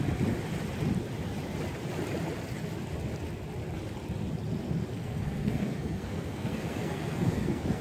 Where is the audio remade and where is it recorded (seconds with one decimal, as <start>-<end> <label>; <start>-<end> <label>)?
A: 0.0-5.0 recorded; 5.0-7.8 remade